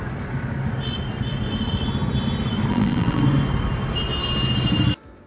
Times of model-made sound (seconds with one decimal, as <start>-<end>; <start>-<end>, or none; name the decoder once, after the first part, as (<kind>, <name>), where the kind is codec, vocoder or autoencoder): 2.7-3.2 (vocoder, BigVGAN v2)